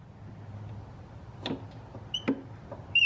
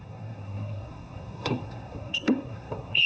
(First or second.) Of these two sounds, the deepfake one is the second